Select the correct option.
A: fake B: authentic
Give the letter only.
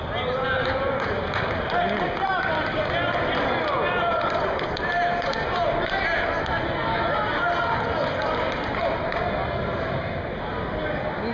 B